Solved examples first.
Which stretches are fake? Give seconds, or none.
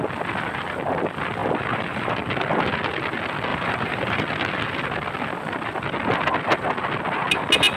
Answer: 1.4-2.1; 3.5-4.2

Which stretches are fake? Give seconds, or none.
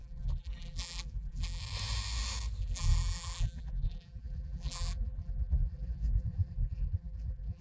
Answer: 0.0-1.6; 2.6-7.6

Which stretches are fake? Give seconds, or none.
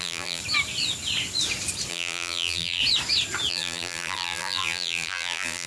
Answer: 0.0-0.4; 1.9-2.8; 3.5-5.7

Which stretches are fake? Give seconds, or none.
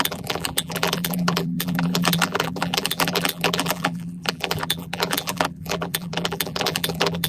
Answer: 0.0-7.3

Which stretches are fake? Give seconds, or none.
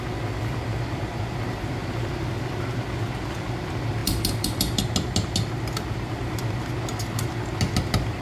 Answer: none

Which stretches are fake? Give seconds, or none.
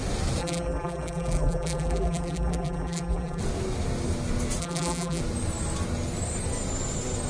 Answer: 0.4-3.4; 4.6-5.2